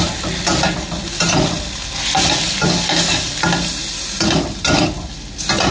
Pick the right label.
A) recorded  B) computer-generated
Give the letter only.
A